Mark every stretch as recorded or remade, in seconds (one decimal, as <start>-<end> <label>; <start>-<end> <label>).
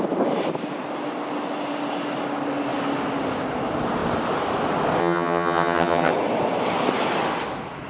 0.0-5.0 recorded; 5.0-6.1 remade; 6.1-7.9 recorded